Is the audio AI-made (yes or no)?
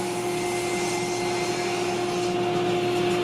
no